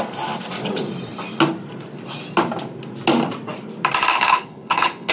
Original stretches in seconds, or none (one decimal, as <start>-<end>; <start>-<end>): 0.0-4.1